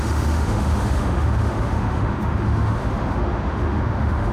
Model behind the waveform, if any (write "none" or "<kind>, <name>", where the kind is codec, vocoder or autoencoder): autoencoder, DAC-VAE